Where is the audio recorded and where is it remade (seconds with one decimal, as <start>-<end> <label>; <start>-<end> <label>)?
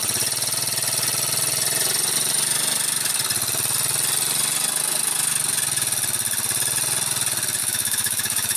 0.0-7.6 recorded; 7.6-8.6 remade